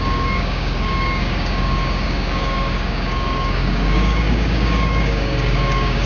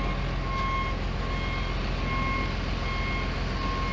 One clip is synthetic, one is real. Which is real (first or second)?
second